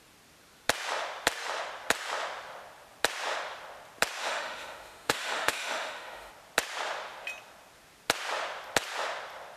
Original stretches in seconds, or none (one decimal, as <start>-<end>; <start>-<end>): 0.0-4.2; 6.3-9.6